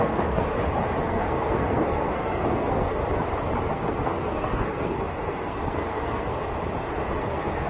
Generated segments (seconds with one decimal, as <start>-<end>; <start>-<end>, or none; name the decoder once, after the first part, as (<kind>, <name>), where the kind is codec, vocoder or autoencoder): 0.0-0.5 (codec, SNAC); 1.0-3.0; 3.7-6.4; 7.1-7.7